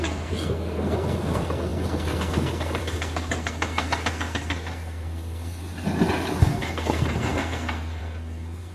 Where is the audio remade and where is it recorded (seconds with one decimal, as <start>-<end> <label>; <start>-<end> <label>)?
0.0-5.6 remade; 5.6-6.4 recorded; 6.4-8.7 remade